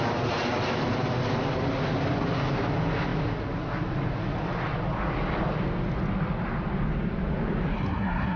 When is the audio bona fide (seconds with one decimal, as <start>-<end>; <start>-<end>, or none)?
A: 0.0-7.7